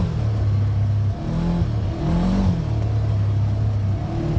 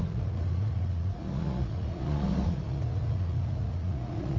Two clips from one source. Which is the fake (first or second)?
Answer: second